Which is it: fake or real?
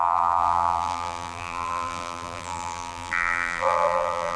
fake